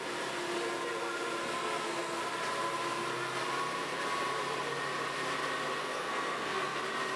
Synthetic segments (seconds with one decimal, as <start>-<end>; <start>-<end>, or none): 1.4-2.2; 5.8-6.8